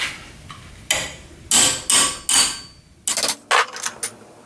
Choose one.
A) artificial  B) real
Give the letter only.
B